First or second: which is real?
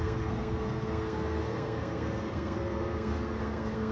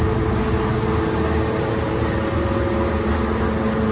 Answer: second